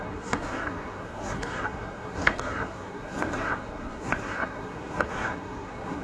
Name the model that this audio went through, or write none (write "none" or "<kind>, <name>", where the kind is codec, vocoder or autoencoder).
codec, SNAC